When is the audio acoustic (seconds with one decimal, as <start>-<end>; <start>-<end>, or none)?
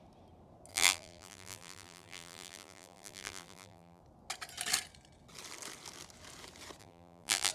0.0-0.7; 4.0-6.8